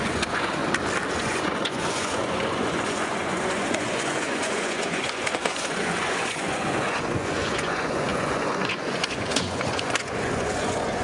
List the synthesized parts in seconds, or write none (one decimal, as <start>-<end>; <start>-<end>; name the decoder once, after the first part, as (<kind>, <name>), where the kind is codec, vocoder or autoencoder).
0.0-0.6 (vocoder, Vocos); 1.1-11.0